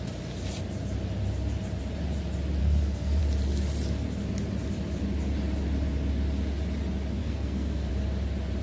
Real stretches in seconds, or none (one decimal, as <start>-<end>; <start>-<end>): 0.0-2.6; 3.2-7.2; 7.9-8.6